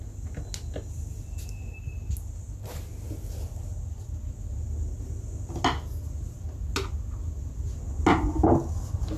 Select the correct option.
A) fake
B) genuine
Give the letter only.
B